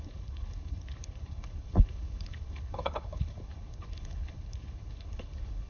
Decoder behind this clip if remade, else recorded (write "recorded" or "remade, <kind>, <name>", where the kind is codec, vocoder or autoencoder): remade, codec, HILCodec